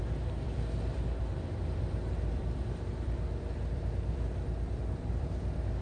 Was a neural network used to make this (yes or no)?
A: yes